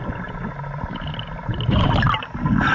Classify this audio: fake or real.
real